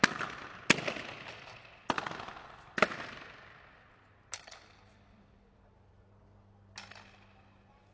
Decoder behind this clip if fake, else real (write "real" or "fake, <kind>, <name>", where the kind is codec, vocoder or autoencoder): real